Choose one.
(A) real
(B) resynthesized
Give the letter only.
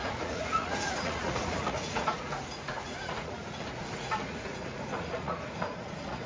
B